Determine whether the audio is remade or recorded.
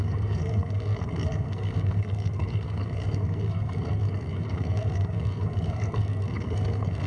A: remade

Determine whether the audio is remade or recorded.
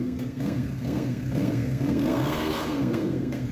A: remade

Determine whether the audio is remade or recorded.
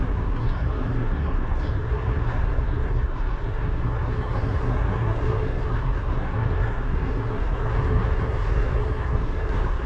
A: remade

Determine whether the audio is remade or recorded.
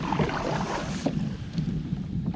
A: recorded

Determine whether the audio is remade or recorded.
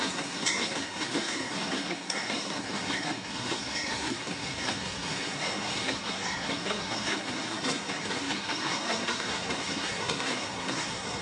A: remade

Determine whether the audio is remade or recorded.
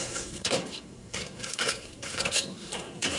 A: remade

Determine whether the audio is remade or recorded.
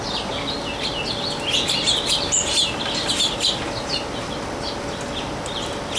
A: recorded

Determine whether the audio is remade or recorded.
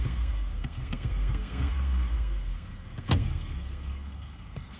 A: remade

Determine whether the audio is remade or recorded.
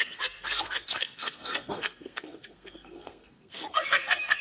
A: remade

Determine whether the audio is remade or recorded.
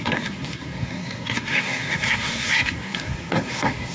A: remade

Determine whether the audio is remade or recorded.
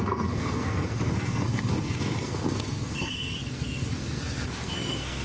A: remade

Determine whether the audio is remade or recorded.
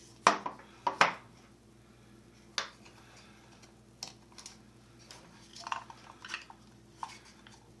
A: recorded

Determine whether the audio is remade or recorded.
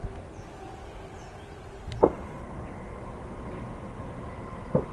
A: recorded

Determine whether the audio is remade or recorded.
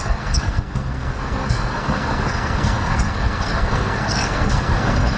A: remade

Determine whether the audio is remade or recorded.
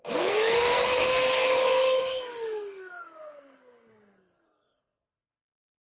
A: remade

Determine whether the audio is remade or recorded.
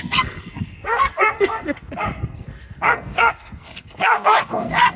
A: remade